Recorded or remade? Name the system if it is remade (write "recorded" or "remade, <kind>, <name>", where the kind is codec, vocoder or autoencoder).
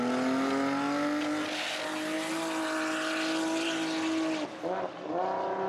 recorded